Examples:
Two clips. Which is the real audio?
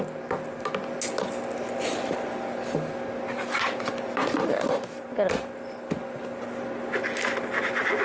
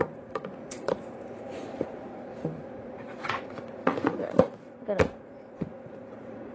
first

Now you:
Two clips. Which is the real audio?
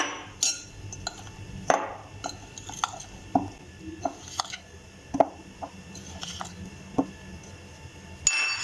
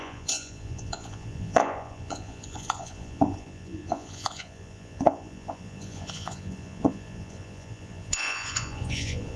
first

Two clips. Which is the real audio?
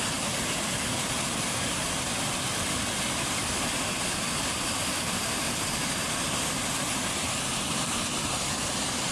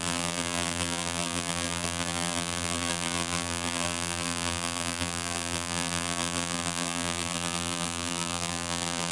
first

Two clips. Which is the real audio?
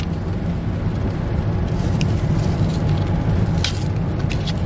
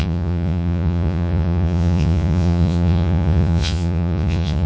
first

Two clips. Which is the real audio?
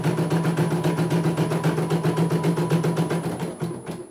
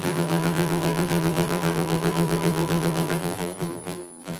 first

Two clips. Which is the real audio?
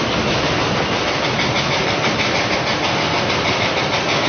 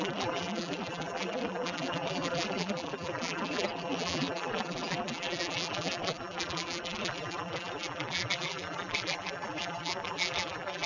first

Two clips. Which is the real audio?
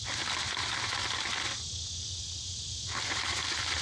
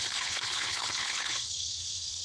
first